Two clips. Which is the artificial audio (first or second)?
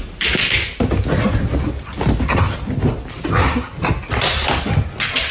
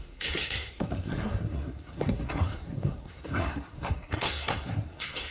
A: second